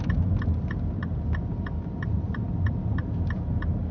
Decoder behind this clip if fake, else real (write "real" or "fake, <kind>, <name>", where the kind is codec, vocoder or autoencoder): real